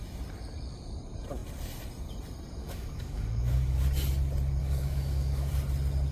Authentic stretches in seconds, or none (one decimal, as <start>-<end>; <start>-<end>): 0.0-2.6; 3.8-4.6; 5.5-6.1